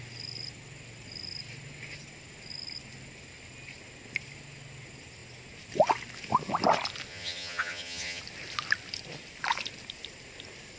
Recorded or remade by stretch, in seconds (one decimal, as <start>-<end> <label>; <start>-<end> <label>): 0.0-7.1 recorded; 7.1-8.2 remade; 8.2-10.8 recorded